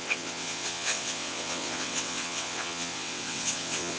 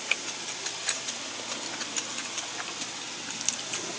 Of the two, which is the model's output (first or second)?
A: first